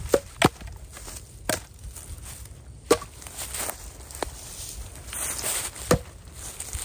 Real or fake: real